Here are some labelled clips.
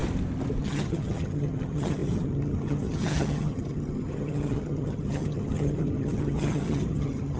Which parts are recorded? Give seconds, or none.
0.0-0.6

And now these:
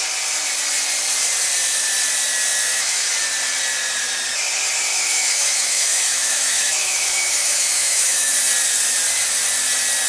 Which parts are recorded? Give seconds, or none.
0.0-2.5; 3.1-4.9; 8.3-10.1

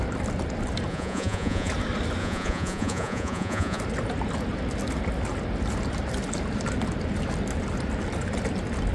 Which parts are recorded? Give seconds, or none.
0.0-0.9; 1.7-2.2; 3.8-8.9

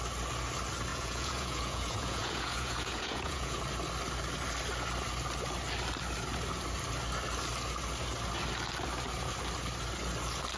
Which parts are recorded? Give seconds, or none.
0.0-0.9; 3.6-10.6

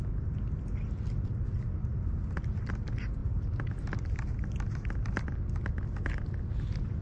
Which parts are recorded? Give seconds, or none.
0.0-7.0

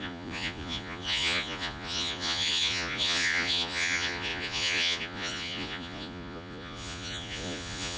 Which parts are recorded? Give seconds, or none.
none